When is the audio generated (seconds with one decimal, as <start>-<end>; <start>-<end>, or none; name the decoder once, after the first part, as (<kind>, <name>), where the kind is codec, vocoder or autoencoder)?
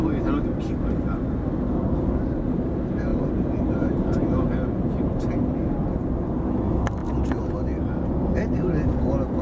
none